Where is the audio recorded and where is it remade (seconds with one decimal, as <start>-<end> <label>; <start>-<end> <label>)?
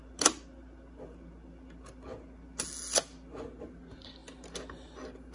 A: 0.0-5.3 recorded